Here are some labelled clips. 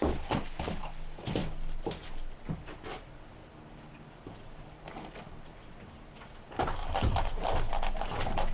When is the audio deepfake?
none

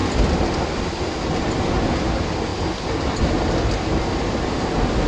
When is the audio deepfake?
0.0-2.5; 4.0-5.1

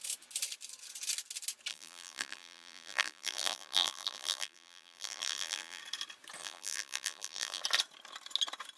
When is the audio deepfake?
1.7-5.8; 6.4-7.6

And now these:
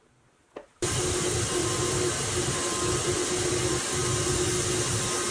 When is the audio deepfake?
1.6-2.5

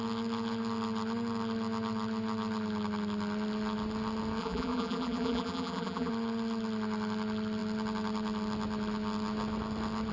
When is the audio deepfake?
4.4-6.1

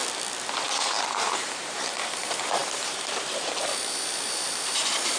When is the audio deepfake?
0.8-5.2